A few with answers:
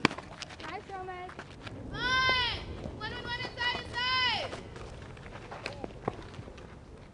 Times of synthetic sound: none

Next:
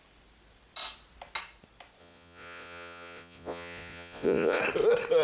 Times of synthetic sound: 2.0-4.6 (vocoder, Vocos)